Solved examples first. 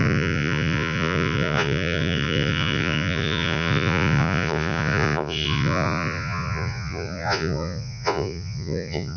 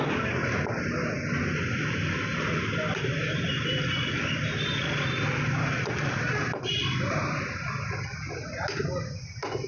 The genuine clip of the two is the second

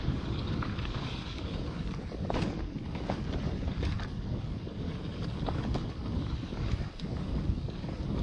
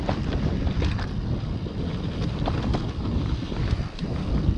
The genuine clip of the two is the second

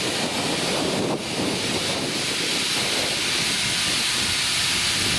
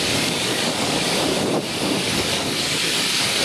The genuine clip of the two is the first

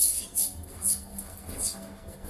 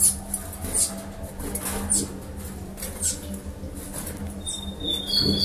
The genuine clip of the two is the second